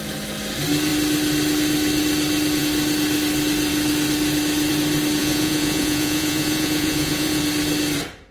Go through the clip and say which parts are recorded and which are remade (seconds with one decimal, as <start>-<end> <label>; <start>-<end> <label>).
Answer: 0.0-5.2 recorded; 5.2-7.4 remade; 7.4-8.3 recorded